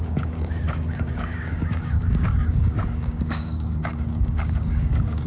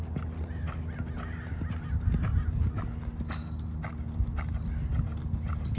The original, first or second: second